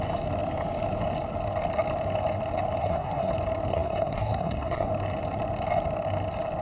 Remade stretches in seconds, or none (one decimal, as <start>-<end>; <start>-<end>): 2.8-3.3; 3.7-4.9